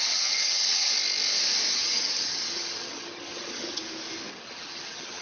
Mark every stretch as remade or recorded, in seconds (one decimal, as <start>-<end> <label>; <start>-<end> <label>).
0.0-0.9 remade; 0.9-1.7 recorded; 1.7-3.8 remade; 3.8-4.3 recorded; 4.3-5.2 remade